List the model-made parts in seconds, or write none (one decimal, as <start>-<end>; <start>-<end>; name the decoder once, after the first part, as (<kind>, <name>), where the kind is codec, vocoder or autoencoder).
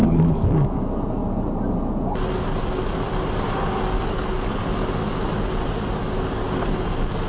0.0-1.2 (codec, DAC); 4.1-4.6; 5.9-6.4